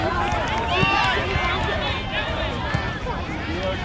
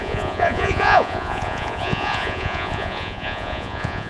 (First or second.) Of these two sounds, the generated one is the second